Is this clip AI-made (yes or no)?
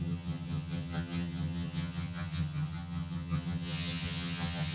yes